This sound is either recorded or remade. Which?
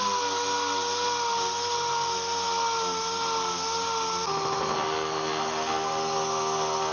recorded